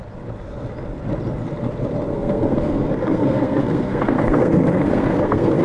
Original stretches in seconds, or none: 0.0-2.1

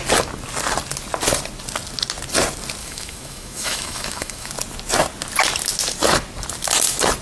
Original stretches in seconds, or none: 0.0-2.8; 4.5-7.2

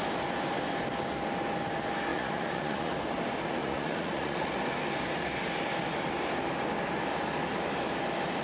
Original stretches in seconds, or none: 0.0-2.1; 2.9-3.6; 4.5-8.4